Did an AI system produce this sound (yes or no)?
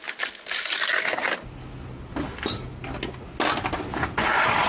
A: no